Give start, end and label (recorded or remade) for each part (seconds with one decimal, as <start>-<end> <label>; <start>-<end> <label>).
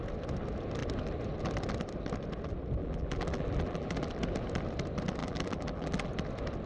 0.0-2.8 recorded; 2.8-4.1 remade; 4.1-5.2 recorded; 5.2-6.1 remade; 6.1-6.7 recorded